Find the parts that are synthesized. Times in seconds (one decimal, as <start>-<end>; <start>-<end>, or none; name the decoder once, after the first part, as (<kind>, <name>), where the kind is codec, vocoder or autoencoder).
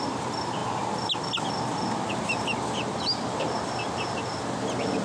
none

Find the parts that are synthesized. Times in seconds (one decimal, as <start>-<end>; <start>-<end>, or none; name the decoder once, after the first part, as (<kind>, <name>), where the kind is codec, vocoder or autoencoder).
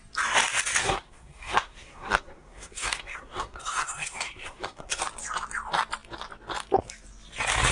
0.8-5.0 (codec, SNAC)